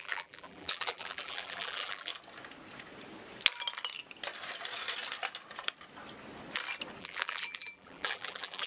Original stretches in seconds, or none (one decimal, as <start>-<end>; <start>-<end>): 2.1-7.0